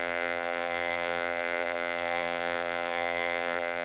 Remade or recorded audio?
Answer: remade